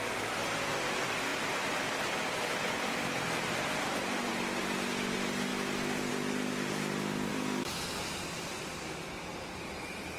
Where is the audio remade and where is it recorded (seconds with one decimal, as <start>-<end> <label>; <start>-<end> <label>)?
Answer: 0.0-1.3 recorded; 1.3-4.3 remade; 4.3-7.3 recorded; 7.3-8.7 remade; 8.7-9.3 recorded; 9.3-10.2 remade